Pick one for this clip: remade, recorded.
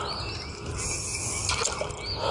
recorded